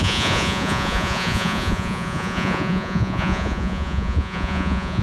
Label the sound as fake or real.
fake